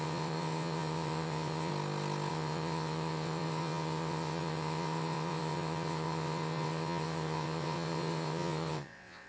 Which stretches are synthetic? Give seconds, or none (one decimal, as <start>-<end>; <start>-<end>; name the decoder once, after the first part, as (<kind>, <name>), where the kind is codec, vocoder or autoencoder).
0.0-1.7 (vocoder, WaveNeXt); 2.3-9.3